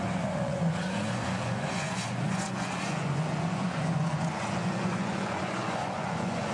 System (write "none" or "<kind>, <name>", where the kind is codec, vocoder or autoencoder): vocoder, Vocos